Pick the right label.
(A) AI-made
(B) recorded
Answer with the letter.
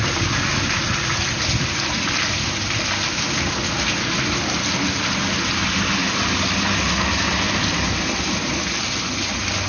B